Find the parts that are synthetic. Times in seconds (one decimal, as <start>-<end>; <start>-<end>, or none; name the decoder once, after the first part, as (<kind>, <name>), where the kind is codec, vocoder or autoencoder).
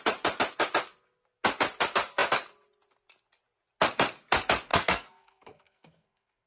4.7-6.5 (codec, SNAC)